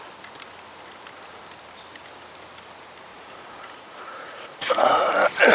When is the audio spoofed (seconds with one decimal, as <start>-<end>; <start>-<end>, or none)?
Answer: 3.1-5.1